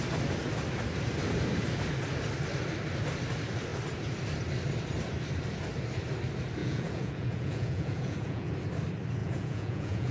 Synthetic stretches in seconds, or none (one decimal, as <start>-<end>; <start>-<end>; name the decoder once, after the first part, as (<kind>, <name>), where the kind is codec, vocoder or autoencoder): 6.6-8.5 (vocoder, Vocos); 9.2-10.1